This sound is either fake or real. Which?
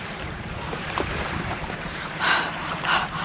fake